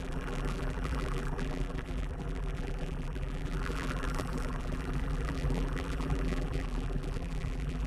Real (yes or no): no